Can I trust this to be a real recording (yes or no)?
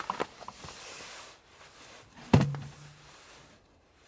yes